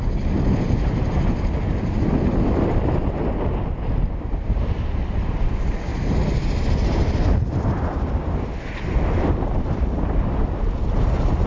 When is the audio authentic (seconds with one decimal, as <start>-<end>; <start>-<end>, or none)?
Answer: 0.0-5.9; 11.1-11.5